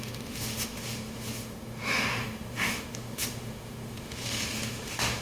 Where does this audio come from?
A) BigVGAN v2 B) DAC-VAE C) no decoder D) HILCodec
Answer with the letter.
B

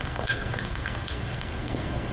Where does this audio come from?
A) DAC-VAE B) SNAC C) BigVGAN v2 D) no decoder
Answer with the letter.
B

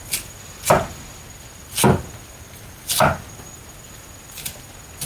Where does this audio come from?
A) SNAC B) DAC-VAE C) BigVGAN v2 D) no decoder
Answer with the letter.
D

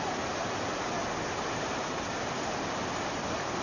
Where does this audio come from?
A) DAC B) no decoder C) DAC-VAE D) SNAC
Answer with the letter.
B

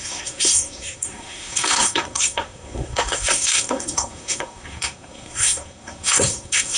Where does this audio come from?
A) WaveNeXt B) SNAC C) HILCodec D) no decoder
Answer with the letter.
B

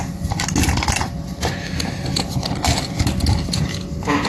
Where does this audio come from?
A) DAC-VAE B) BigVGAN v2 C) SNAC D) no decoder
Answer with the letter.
D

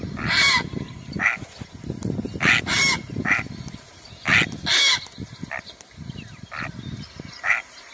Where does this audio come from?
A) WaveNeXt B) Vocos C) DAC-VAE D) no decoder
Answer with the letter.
D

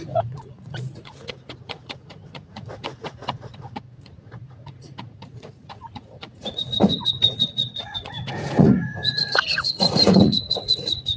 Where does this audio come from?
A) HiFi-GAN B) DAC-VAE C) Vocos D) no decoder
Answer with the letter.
C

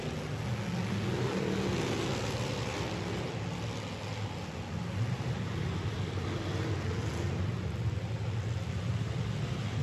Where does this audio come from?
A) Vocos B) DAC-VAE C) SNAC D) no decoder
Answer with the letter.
D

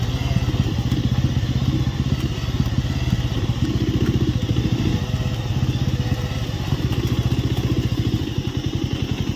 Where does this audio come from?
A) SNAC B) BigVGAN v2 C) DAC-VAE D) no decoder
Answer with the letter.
D